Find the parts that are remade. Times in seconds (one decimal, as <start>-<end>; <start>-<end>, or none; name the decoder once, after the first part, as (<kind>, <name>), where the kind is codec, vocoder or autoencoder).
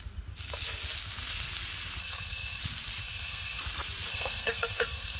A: 2.0-2.6 (codec, SNAC); 3.0-3.6; 4.1-5.2